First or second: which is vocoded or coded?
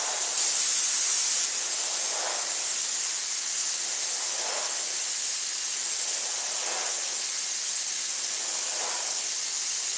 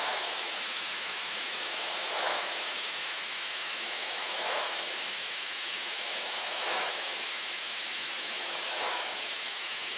second